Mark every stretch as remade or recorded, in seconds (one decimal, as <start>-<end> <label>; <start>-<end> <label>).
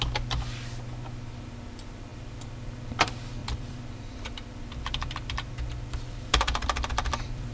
0.0-3.4 recorded; 3.4-7.5 remade